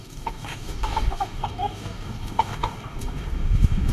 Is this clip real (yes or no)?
no